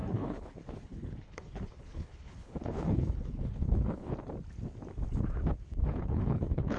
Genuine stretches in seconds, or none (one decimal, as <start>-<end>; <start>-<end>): 4.1-5.8